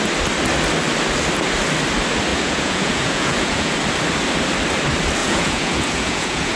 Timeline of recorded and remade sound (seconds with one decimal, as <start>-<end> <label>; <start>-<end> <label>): 0.0-2.3 recorded; 2.3-3.7 remade; 3.7-5.2 recorded; 5.2-6.6 remade